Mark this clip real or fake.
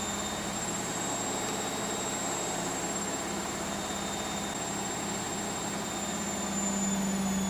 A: real